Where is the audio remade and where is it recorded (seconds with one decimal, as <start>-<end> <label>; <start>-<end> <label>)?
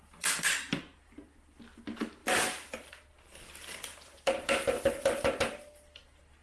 0.0-2.2 recorded; 2.2-2.9 remade; 2.9-3.9 recorded; 3.9-5.4 remade; 5.4-6.4 recorded